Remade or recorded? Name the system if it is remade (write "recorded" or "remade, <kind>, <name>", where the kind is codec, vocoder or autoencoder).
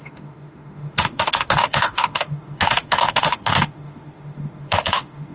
remade, autoencoder, DAC-VAE